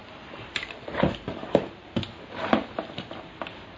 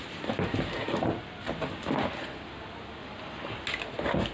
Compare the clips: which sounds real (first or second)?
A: second